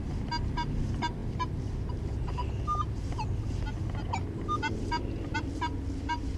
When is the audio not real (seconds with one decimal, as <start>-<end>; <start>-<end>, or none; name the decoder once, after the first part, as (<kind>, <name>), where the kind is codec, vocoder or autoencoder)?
none